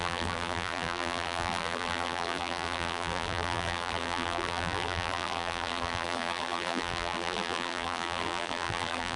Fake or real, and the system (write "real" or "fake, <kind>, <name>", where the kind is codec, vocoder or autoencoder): fake, vocoder, BigVGAN v2